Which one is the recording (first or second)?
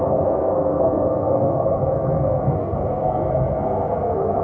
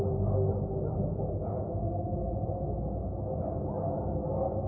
second